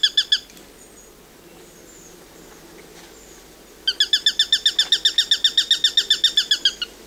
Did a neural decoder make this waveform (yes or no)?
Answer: no